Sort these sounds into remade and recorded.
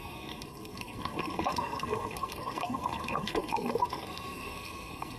remade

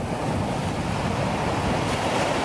recorded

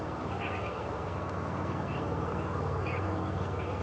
remade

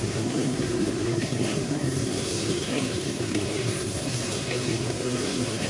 remade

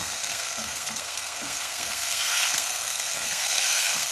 remade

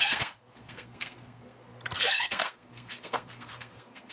remade